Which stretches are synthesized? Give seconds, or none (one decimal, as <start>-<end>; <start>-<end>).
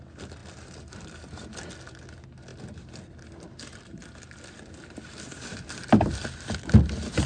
5.5-6.2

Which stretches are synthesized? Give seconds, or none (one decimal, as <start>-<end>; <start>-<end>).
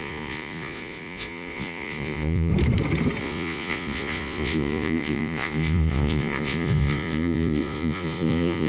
0.0-2.5; 3.2-8.7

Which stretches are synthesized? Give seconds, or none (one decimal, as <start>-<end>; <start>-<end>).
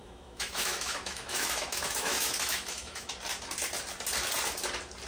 0.0-3.1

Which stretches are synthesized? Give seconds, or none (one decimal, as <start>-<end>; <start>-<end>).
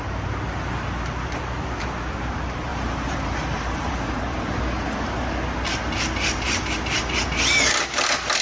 2.7-4.6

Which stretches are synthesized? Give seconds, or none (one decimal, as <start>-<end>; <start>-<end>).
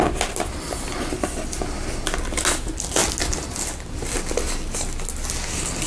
none